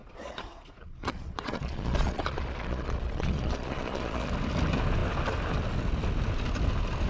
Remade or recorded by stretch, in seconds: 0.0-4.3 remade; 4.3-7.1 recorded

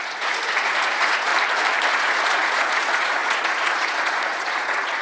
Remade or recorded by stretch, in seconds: 0.0-1.3 remade; 1.3-1.9 recorded; 1.9-5.0 remade